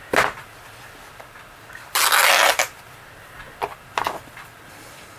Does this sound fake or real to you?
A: real